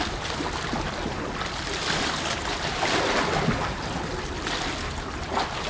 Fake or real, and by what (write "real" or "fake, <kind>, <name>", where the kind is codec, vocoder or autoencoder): real